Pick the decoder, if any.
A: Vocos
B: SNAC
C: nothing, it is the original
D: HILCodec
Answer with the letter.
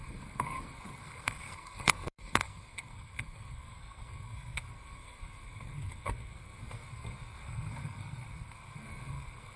B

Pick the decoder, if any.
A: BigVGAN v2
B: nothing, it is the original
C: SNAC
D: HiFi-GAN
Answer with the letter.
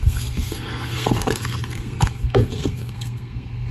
C